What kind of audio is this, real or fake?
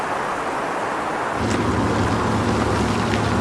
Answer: real